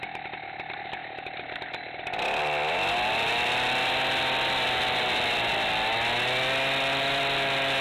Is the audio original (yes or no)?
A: yes